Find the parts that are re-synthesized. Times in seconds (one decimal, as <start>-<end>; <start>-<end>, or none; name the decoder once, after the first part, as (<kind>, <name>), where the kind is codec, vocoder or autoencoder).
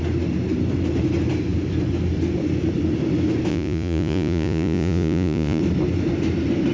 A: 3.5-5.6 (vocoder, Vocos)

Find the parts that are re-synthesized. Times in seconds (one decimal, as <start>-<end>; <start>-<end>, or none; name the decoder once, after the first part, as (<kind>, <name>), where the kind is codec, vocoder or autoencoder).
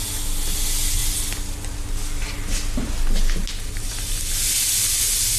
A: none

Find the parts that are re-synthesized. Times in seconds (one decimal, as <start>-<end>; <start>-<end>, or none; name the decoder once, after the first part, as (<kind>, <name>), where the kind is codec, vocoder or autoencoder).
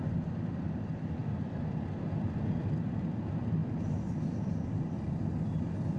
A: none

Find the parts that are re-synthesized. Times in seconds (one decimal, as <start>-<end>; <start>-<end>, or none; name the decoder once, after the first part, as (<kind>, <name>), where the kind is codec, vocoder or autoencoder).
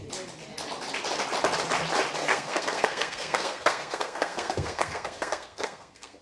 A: 2.2-6.2 (codec, SNAC)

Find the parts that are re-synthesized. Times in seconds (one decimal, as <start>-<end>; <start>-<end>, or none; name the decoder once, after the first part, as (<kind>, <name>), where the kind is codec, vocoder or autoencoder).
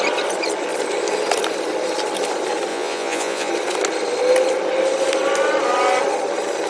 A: 2.7-3.5 (vocoder, Vocos)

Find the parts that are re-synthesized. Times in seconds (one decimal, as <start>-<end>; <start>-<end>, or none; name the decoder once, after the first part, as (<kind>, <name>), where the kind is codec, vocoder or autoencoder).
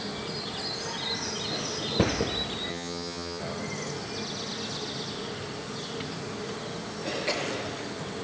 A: 2.7-3.4 (vocoder, HiFi-GAN)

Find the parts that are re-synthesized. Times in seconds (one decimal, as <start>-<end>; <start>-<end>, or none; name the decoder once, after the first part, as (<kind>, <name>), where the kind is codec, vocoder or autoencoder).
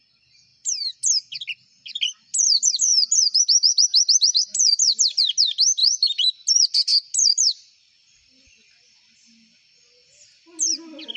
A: none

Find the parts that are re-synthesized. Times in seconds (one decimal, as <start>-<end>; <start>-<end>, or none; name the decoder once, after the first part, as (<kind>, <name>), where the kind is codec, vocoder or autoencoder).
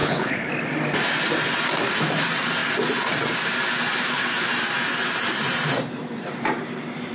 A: 0.0-0.5 (codec, HILCodec)